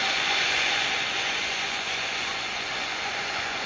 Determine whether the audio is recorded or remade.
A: remade